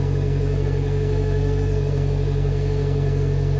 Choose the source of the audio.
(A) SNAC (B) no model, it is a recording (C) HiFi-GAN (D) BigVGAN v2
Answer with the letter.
A